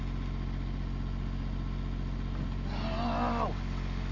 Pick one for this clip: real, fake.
real